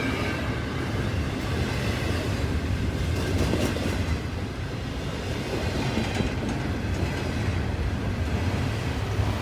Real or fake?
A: real